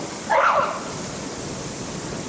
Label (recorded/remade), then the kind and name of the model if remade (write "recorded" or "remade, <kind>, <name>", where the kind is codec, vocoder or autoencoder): recorded